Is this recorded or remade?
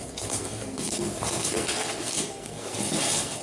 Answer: remade